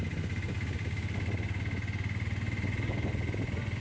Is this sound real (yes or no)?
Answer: yes